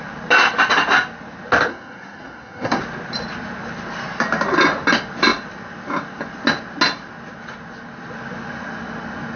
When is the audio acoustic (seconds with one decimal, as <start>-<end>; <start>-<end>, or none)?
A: 0.0-1.7; 2.8-9.4